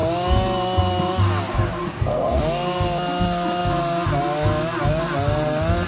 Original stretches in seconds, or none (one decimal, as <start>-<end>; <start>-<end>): 0.0-1.8; 2.4-5.9